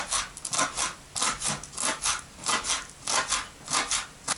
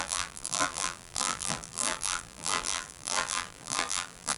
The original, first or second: first